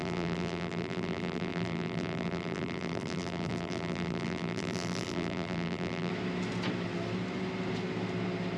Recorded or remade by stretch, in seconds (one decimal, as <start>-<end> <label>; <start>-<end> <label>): 0.0-6.1 remade; 6.1-8.6 recorded